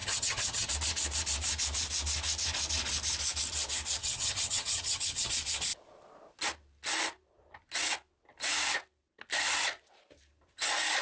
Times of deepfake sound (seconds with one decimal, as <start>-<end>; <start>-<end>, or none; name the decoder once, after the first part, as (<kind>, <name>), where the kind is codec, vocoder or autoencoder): 0.0-0.7 (vocoder, HiFi-GAN); 4.0-5.3